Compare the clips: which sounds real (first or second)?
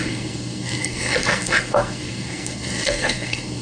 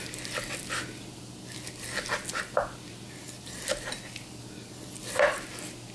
second